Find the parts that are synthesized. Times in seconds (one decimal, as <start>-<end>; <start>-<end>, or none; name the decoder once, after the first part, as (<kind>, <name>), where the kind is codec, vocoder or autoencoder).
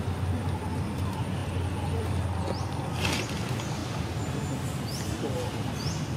none